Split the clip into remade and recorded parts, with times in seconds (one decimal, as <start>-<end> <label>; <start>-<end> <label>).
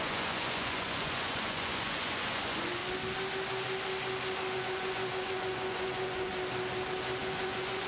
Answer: 0.0-2.8 remade; 2.8-4.5 recorded; 4.5-6.3 remade; 6.3-7.2 recorded; 7.2-7.9 remade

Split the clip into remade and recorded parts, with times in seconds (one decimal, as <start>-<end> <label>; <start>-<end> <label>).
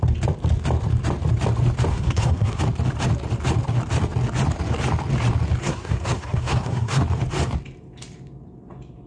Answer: 0.0-1.9 recorded; 1.9-2.6 remade; 2.6-5.6 recorded; 5.6-7.0 remade; 7.0-9.1 recorded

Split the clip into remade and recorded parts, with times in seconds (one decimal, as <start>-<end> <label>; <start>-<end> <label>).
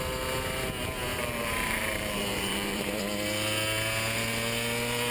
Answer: 0.0-1.1 recorded; 1.1-3.0 remade; 3.0-5.1 recorded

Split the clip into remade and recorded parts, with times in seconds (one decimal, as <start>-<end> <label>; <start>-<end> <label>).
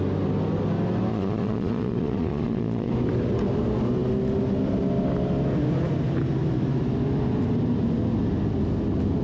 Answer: 0.0-1.1 recorded; 1.1-2.9 remade; 2.9-9.2 recorded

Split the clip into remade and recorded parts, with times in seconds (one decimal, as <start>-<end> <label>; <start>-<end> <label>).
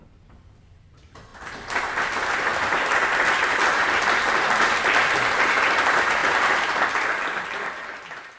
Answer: 0.0-2.5 recorded; 2.5-4.5 remade; 4.5-8.4 recorded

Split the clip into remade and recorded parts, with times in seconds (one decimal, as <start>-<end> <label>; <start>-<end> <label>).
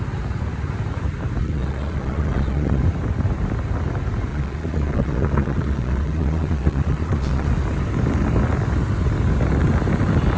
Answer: 0.0-1.4 recorded; 1.4-2.8 remade; 2.8-4.3 recorded; 4.3-7.5 remade; 7.5-10.4 recorded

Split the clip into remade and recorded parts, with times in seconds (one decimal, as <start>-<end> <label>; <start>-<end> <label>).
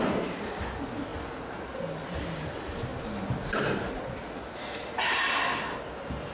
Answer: 0.0-6.3 recorded